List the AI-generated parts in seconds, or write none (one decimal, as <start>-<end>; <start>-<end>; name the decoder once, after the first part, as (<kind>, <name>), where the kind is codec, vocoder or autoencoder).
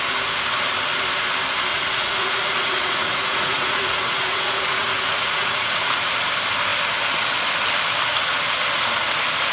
1.7-6.1 (vocoder, Vocos)